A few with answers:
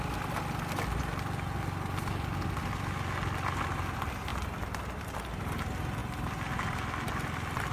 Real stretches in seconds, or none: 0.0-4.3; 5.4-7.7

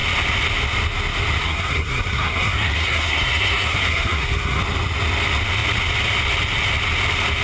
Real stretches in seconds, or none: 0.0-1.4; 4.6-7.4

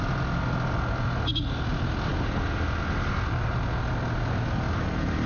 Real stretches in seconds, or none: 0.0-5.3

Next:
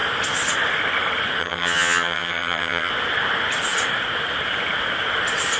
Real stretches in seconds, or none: 0.0-1.4; 2.9-5.6